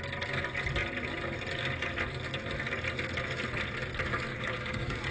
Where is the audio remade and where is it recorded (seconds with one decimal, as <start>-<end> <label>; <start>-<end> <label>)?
0.0-4.3 recorded; 4.3-5.1 remade